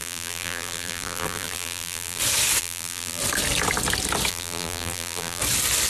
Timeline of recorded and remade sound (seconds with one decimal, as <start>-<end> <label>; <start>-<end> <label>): 0.0-2.2 remade; 2.2-2.6 recorded; 2.6-3.2 remade; 3.2-4.3 recorded; 4.3-5.4 remade; 5.4-5.9 recorded